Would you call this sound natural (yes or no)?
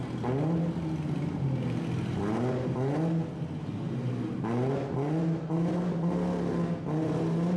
yes